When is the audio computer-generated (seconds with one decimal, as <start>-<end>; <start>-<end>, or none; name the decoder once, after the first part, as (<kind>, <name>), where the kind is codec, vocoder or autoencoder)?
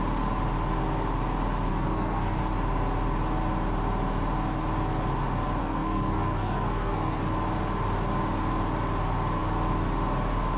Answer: 1.7-2.4 (codec, SNAC); 5.6-7.2